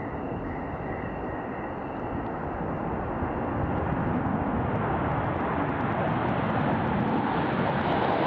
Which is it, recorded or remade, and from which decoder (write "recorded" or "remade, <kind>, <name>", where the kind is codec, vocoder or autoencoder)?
recorded